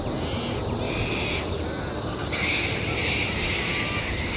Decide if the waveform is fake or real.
real